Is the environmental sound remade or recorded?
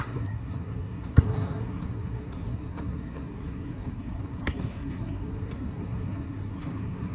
remade